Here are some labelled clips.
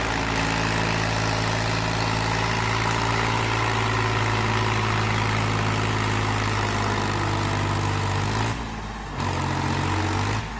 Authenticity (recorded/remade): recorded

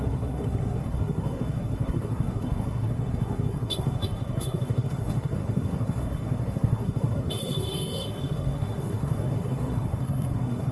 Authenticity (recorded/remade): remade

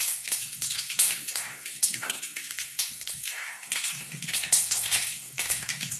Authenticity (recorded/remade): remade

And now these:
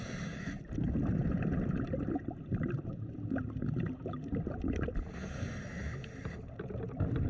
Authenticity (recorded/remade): recorded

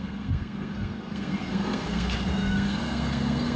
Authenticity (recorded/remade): remade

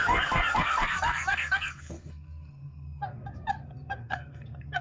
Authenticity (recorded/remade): remade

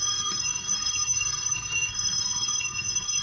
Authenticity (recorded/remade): remade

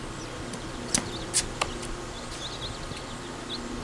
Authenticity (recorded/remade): recorded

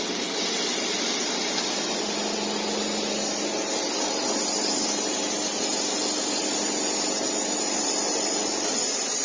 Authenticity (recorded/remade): recorded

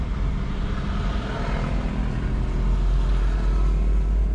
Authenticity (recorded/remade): recorded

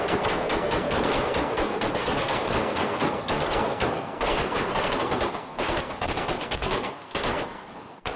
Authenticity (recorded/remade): remade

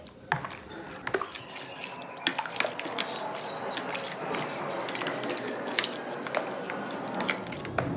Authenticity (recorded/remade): recorded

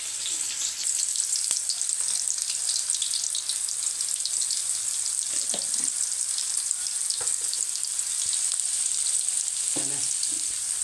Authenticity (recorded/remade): recorded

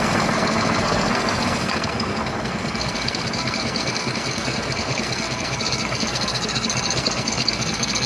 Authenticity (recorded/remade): remade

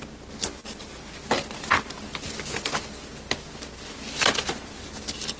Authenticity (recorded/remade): recorded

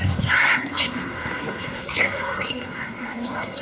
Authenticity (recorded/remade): remade